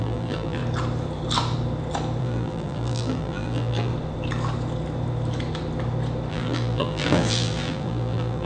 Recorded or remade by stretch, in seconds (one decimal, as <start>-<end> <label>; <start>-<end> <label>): 0.0-0.6 remade; 0.6-2.2 recorded; 2.2-3.9 remade; 3.9-6.3 recorded; 6.3-8.5 remade